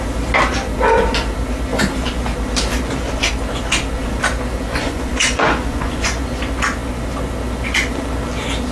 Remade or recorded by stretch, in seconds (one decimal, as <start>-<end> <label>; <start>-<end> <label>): 0.0-4.7 recorded; 4.7-6.2 remade; 6.2-8.7 recorded